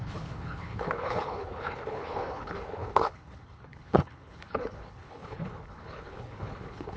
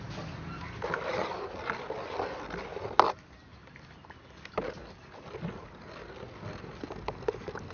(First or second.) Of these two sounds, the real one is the second